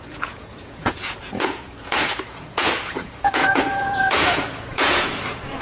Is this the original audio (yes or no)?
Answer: no